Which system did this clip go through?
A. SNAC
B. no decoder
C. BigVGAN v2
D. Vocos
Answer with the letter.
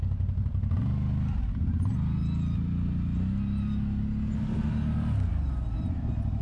B